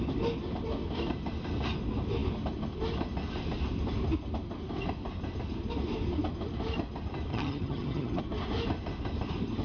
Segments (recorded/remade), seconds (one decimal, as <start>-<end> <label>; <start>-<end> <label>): 0.0-7.3 recorded; 7.3-8.2 remade; 8.2-9.6 recorded